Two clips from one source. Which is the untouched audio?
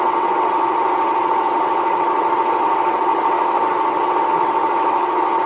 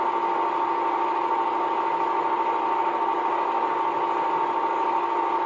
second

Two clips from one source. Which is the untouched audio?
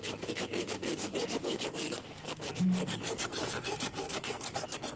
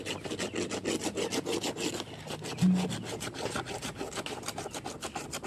second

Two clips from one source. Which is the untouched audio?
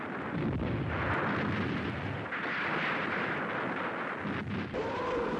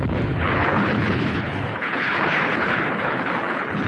first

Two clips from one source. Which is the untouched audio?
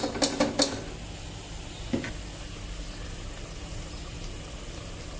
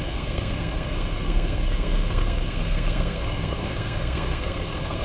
first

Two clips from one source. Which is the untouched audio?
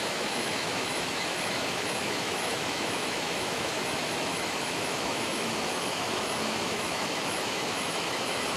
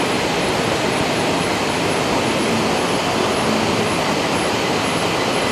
second